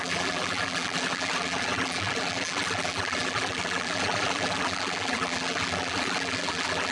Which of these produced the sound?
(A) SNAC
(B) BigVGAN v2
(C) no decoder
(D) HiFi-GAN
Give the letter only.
B